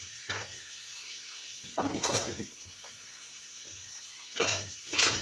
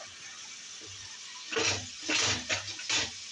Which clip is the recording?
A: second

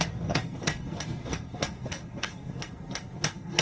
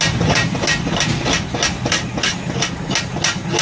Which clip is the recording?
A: second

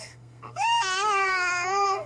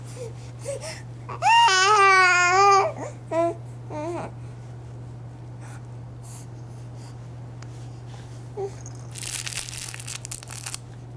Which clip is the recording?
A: second